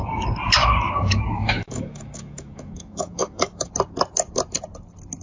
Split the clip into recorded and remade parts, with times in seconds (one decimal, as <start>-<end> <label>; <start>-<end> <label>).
0.0-0.6 recorded; 0.6-3.7 remade; 3.7-5.2 recorded